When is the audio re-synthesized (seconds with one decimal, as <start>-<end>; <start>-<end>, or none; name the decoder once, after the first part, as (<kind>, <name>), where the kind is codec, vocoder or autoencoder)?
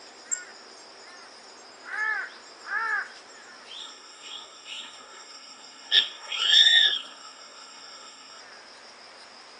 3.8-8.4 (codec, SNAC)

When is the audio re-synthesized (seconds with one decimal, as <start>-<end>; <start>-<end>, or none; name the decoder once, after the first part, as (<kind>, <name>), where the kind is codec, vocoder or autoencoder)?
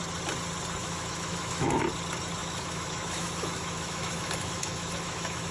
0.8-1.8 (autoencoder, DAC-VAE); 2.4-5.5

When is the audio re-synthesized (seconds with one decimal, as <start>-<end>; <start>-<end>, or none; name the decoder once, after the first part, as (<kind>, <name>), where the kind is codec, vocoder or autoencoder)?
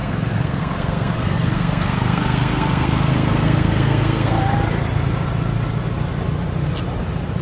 0.0-4.4 (codec, SNAC)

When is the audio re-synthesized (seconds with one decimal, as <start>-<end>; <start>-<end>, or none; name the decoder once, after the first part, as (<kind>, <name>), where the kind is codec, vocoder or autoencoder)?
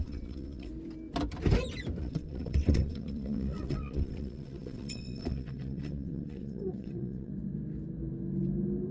0.0-0.7 (vocoder, WaveNeXt); 2.0-7.3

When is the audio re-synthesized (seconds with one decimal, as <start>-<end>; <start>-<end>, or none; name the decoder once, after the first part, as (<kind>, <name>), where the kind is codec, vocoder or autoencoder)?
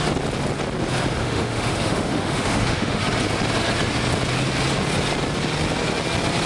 1.2-3.0 (autoencoder, DAC-VAE)